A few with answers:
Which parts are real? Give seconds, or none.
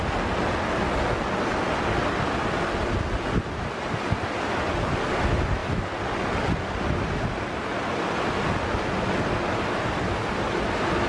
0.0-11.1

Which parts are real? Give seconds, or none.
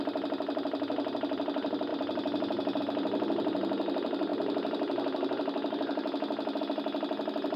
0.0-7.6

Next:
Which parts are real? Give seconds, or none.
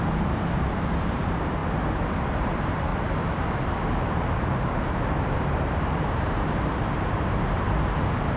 1.6-2.3; 2.9-3.8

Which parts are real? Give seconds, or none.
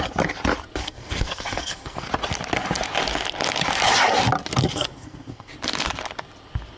0.0-0.8; 2.1-4.6; 5.5-6.8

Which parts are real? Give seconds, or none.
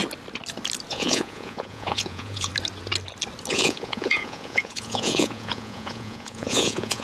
0.0-0.9; 2.5-3.5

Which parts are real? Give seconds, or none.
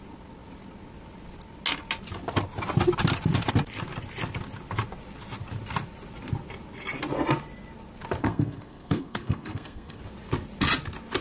0.0-8.2; 10.0-11.2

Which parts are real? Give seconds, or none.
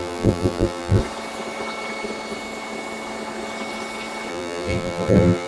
1.0-4.3